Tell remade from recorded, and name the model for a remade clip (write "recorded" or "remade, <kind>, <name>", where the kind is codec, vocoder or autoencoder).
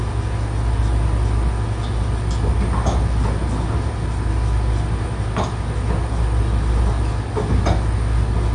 recorded